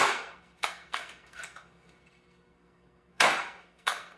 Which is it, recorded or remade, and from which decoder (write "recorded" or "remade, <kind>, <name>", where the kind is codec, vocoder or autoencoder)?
remade, codec, SNAC